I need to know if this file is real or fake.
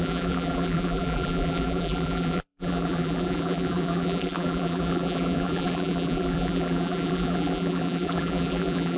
fake